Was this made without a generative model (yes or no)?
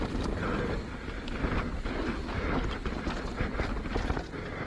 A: yes